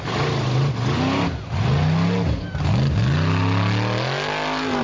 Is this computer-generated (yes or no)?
no